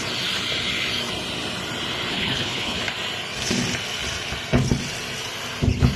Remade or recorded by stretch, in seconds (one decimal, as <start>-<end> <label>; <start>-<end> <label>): 0.0-2.1 recorded; 2.1-2.8 remade; 2.8-6.0 recorded